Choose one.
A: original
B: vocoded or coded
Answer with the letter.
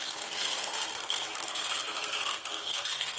B